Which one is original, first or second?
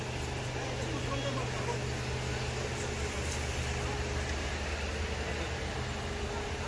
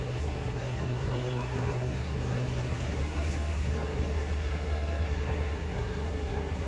first